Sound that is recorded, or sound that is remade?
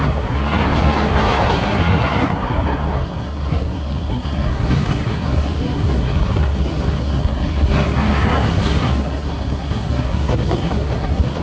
remade